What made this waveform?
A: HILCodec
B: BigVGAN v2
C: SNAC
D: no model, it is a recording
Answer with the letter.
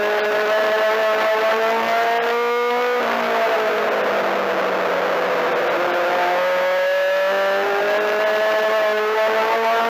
D